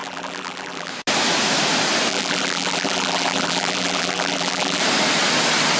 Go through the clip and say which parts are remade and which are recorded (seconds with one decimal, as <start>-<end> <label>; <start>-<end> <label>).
0.0-0.9 remade; 0.9-2.1 recorded; 2.1-4.8 remade; 4.8-5.8 recorded

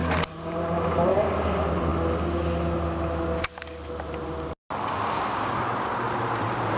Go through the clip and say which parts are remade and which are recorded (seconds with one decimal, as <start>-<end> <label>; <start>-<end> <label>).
0.0-1.9 remade; 1.9-4.9 recorded; 4.9-6.8 remade

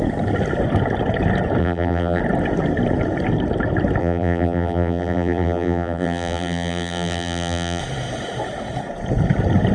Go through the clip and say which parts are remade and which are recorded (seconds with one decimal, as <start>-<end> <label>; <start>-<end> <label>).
0.0-1.6 recorded; 1.6-2.2 remade; 2.2-4.0 recorded; 4.0-7.8 remade; 7.8-9.7 recorded

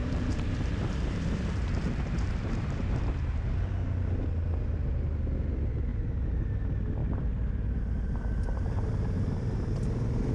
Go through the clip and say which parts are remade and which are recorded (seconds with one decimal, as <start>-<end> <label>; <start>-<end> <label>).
0.0-3.1 remade; 3.1-5.9 recorded; 5.9-6.4 remade; 6.4-7.0 recorded; 7.0-10.3 remade

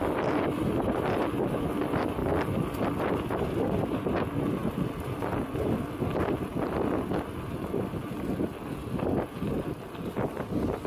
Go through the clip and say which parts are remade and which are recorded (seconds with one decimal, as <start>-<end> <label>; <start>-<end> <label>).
0.0-0.9 recorded; 0.9-4.6 remade; 4.6-7.3 recorded; 7.3-8.8 remade; 8.8-10.9 recorded

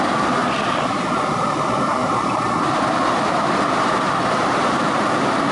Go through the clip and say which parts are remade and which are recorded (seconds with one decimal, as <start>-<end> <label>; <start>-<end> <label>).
0.0-2.0 recorded; 2.0-2.8 remade; 2.8-5.5 recorded

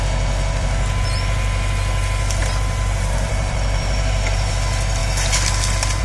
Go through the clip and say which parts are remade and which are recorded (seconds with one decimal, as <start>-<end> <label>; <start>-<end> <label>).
0.0-2.4 recorded; 2.4-4.5 remade; 4.5-6.0 recorded